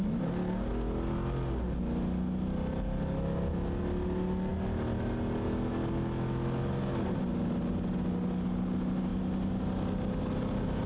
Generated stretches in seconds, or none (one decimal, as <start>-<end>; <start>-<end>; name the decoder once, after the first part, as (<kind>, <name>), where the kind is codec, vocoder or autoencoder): none